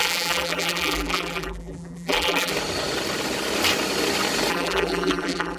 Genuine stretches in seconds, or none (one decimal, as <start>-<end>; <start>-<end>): 2.5-4.5